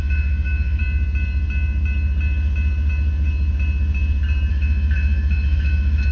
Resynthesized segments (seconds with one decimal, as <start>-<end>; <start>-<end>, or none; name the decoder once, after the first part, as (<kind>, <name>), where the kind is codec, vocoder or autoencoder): 0.0-0.8 (autoencoder, DAC-VAE); 4.5-6.1